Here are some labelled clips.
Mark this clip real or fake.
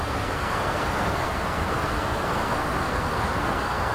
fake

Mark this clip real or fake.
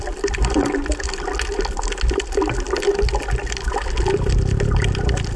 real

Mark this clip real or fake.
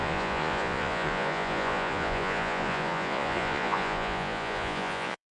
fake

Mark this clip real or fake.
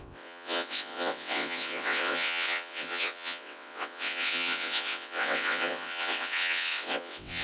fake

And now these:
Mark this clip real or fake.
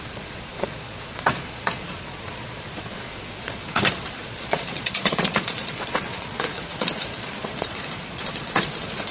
fake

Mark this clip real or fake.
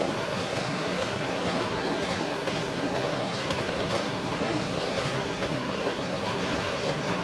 fake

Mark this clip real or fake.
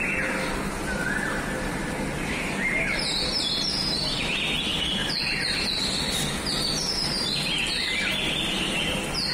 real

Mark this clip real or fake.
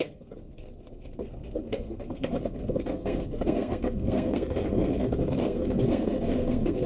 fake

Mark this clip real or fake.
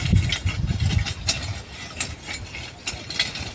real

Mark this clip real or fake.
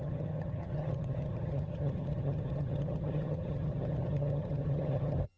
fake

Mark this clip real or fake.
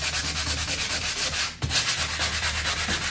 real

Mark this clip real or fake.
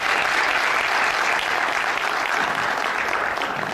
real